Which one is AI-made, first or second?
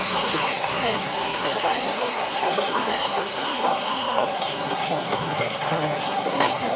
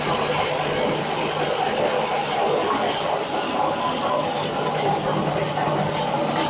first